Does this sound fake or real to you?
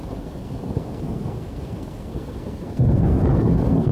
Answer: fake